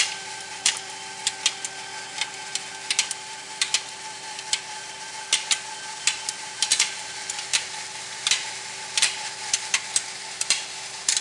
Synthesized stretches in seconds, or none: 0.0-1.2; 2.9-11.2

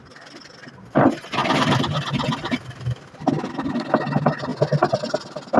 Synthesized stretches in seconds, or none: none

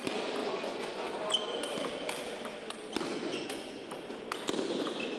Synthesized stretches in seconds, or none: 0.4-1.1; 3.1-3.9

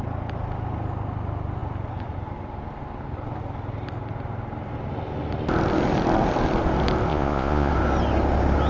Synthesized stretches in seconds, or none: 7.1-7.7